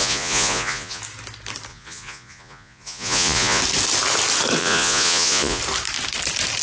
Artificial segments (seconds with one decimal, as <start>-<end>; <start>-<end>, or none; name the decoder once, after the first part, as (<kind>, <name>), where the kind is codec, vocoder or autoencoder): 0.0-1.0 (vocoder, Vocos); 1.7-3.6; 4.6-5.6